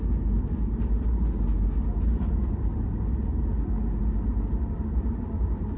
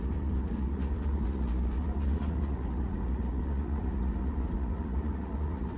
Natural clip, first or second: first